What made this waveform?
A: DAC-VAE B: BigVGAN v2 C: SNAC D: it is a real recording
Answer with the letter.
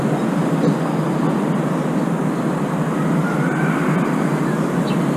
D